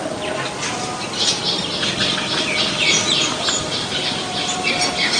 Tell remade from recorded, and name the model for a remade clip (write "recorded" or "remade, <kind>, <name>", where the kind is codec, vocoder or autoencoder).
recorded